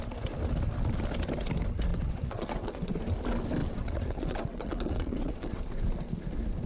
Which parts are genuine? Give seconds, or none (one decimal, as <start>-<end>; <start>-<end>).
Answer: 0.0-1.9; 3.0-3.6; 5.6-6.7